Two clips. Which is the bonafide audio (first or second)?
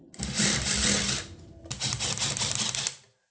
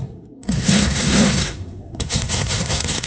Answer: first